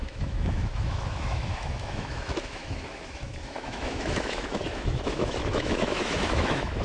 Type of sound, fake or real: fake